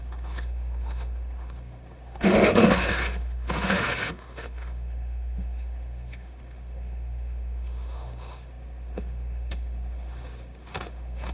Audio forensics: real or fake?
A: fake